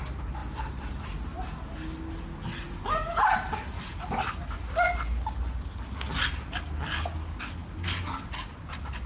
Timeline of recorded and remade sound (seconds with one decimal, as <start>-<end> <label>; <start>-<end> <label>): 0.0-9.1 recorded